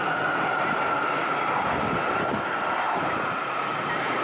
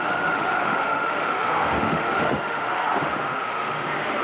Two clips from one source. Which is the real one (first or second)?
first